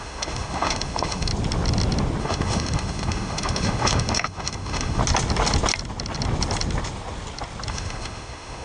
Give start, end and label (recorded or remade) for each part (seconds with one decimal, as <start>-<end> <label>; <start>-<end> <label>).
0.0-1.3 remade; 1.3-2.2 recorded; 2.2-5.0 remade; 5.0-7.7 recorded; 7.7-8.6 remade

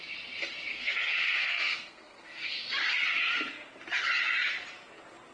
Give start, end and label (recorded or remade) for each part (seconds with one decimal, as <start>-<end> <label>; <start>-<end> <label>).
0.0-0.7 recorded; 0.7-2.7 remade; 2.7-5.3 recorded

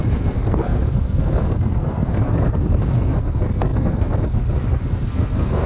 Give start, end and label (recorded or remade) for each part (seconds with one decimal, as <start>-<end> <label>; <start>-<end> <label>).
0.0-5.7 remade